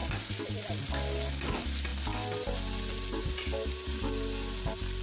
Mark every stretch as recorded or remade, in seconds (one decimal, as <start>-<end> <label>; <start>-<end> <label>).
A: 0.0-5.0 recorded